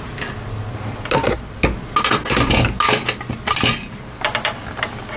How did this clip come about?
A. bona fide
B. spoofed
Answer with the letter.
A